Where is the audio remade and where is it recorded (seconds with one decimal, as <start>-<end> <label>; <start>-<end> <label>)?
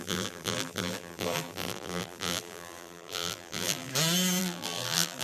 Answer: 0.0-3.9 remade; 3.9-4.4 recorded; 4.4-5.2 remade